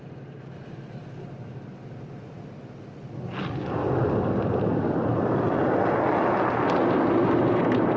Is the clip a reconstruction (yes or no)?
no